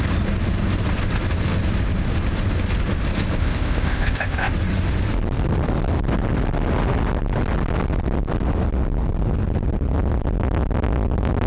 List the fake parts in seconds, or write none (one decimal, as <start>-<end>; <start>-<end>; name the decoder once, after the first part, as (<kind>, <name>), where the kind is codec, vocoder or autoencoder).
3.4-4.5 (codec, ZipCodec)